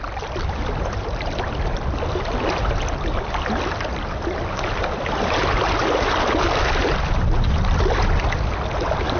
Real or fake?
real